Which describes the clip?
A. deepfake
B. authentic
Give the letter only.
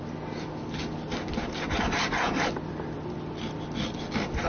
B